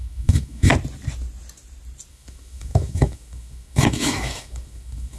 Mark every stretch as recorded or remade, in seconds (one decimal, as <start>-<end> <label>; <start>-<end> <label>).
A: 0.0-0.7 remade; 0.7-2.1 recorded; 2.1-5.2 remade